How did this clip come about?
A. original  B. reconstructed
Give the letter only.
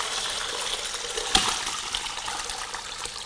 A